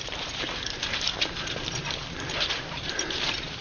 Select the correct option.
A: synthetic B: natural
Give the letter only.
A